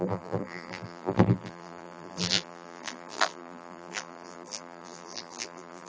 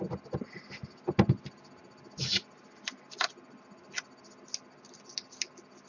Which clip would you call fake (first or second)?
first